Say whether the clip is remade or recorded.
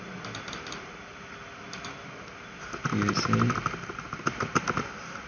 recorded